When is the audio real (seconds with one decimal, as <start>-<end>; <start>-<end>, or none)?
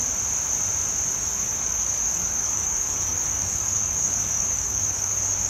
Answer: 0.0-1.1